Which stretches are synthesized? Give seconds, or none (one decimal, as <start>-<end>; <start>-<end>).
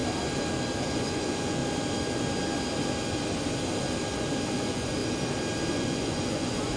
0.8-1.6; 4.5-5.0; 5.7-6.8